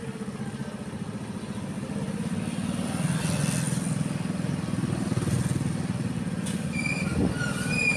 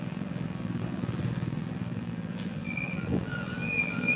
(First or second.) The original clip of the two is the first